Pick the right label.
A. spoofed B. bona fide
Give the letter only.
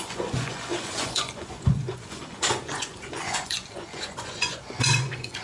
A